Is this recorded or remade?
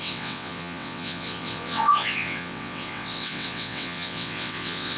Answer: remade